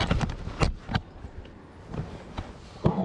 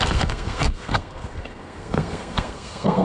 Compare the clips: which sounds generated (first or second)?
second